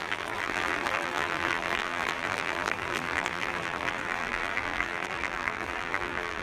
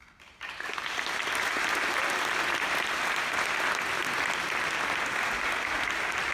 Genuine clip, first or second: second